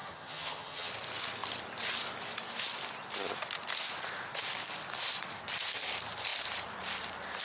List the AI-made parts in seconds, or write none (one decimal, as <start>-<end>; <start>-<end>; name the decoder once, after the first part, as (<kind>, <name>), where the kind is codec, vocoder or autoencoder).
0.0-0.9 (vocoder, HiFi-GAN)